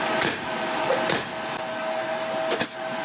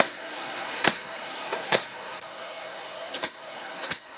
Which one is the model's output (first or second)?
second